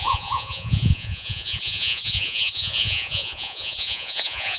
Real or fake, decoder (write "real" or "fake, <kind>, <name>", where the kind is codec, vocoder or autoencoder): fake, vocoder, Vocos